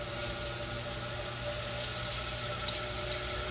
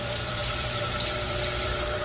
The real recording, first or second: first